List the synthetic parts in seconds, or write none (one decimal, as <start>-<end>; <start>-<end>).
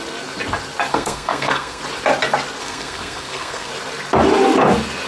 0.9-1.8; 2.6-3.7